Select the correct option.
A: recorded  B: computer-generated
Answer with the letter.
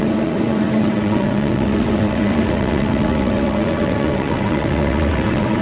B